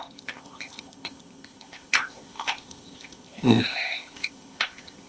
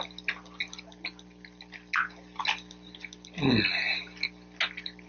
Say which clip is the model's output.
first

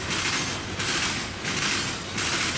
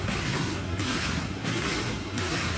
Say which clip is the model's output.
second